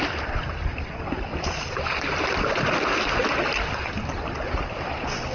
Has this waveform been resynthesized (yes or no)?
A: yes